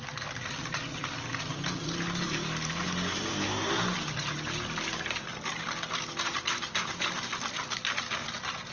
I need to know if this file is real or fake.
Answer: real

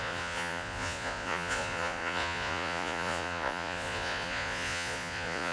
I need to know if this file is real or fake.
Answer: fake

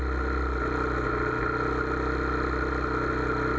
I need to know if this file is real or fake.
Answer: real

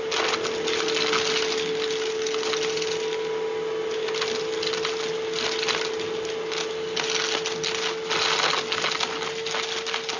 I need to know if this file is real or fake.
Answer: real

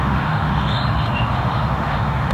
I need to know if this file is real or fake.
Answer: fake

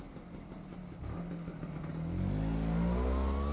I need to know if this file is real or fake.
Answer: real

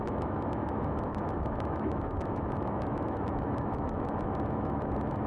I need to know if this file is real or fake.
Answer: fake